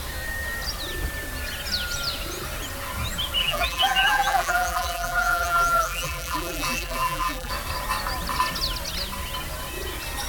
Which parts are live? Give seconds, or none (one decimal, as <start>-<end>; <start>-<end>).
0.0-3.4; 7.5-10.3